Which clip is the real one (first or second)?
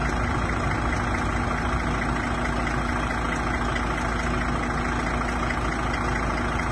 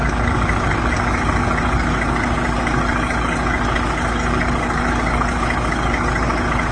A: first